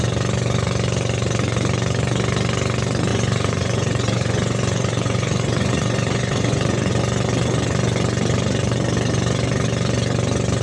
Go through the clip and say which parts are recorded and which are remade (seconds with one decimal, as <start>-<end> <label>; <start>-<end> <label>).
0.0-3.1 recorded; 3.1-6.9 remade; 6.9-10.6 recorded